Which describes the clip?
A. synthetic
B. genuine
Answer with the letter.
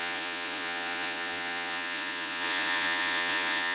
A